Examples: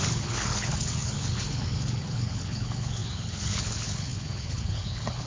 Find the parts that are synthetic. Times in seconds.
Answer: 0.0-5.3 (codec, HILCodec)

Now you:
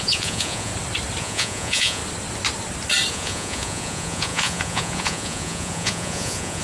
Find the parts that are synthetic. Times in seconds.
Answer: 0.0-0.7 (vocoder, Vocos); 1.2-2.0; 3.1-6.6

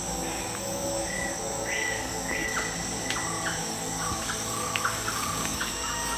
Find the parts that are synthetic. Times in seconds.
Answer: 0.0-2.5 (codec, DAC); 3.6-6.2

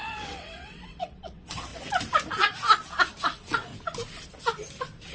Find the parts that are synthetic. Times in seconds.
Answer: 0.0-1.7 (vocoder, WaveNeXt); 3.2-3.7

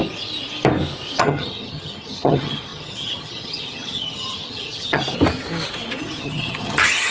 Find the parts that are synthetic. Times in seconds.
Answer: 1.2-5.0 (vocoder, HiFi-GAN); 6.0-7.1

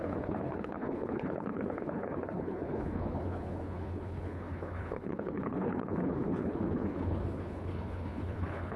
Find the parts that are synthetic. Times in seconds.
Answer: 0.0-8.8 (codec, HILCodec)